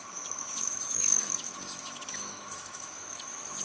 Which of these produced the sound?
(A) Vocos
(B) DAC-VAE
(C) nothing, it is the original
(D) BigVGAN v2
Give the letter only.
B